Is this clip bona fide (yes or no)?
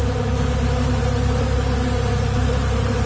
yes